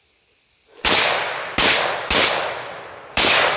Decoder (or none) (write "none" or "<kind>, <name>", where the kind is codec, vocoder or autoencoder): vocoder, BigVGAN v2